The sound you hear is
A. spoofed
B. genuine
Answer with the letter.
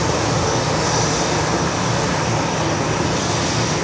B